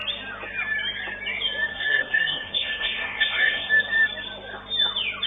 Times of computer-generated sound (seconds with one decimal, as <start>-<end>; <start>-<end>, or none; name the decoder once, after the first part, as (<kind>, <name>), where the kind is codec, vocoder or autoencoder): 1.7-3.7 (codec, SNAC)